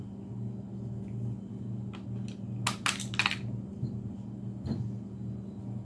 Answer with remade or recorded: recorded